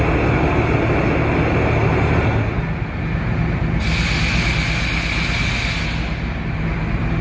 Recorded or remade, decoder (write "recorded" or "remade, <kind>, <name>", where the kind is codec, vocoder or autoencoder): recorded